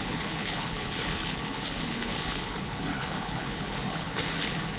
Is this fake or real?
fake